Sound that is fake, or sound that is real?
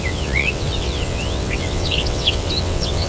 fake